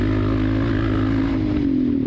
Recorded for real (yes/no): yes